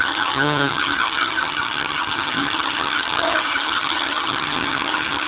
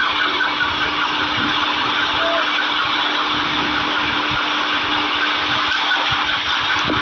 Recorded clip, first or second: second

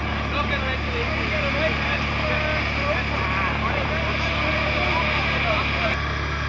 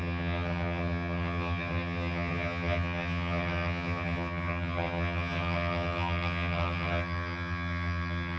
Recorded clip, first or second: first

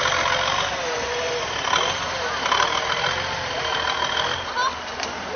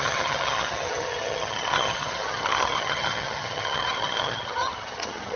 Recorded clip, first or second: first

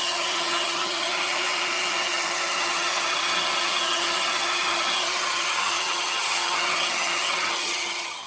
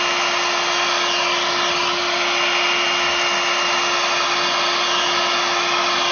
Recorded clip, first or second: second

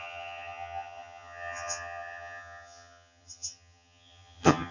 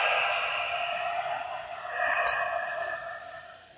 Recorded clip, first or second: second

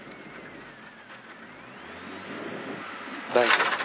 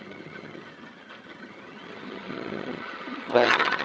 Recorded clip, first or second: first